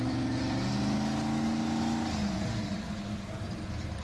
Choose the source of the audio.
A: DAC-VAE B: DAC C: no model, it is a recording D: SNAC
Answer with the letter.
C